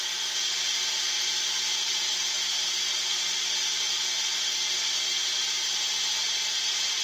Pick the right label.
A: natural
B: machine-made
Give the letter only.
A